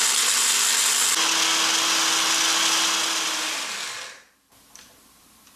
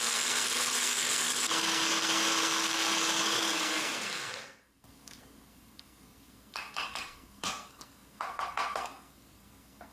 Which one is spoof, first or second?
second